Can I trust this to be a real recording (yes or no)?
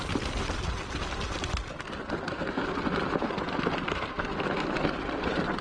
yes